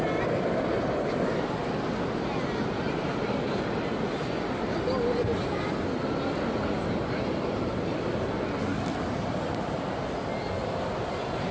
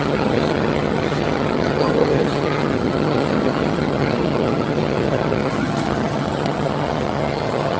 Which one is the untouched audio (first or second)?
first